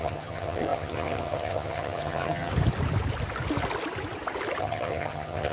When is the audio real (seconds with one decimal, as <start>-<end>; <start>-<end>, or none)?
2.5-4.6